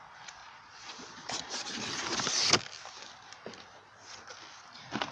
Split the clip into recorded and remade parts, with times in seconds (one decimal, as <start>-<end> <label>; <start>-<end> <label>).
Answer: 0.0-0.4 recorded; 0.4-1.8 remade; 1.8-5.1 recorded